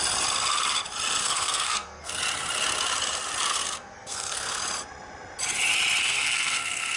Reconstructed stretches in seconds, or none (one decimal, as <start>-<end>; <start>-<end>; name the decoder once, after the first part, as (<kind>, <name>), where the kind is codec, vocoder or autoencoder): 1.2-2.2 (codec, SNAC); 3.5-4.6; 6.0-7.0